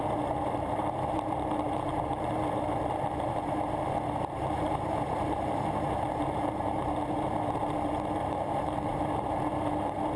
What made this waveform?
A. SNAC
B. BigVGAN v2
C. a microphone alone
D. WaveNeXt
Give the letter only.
B